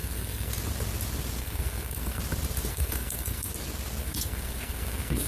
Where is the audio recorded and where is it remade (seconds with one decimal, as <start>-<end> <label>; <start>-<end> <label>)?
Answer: 0.0-0.5 remade; 0.5-1.4 recorded; 1.4-2.2 remade; 2.2-2.7 recorded; 2.7-3.5 remade; 3.5-4.0 recorded; 4.0-5.3 remade